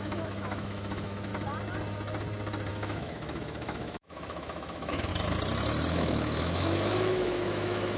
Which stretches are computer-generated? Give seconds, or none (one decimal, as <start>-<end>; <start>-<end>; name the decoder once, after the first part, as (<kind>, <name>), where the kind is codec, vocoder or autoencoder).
0.0-1.3 (autoencoder, DAC-VAE); 2.7-5.1; 5.9-8.0